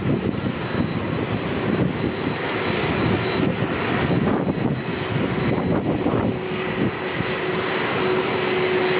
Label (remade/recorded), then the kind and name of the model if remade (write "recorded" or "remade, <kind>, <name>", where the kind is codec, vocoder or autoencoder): recorded